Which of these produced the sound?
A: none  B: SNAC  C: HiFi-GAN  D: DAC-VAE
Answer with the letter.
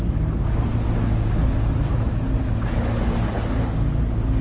A